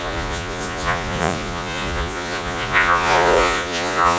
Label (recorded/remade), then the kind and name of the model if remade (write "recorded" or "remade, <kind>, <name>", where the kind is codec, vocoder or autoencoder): remade, vocoder, Vocos